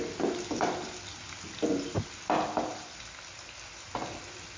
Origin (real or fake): real